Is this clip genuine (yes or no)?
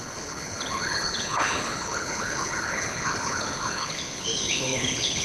no